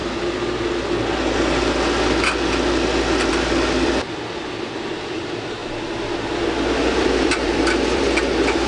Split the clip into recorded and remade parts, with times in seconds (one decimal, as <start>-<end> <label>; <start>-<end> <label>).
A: 0.0-3.3 recorded; 3.3-5.6 remade; 5.6-6.3 recorded; 6.3-8.7 remade